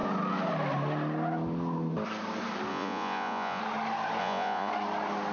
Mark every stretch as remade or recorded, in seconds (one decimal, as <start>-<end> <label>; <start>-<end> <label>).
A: 0.0-2.7 recorded; 2.7-3.6 remade; 3.6-4.2 recorded; 4.2-4.7 remade; 4.7-5.3 recorded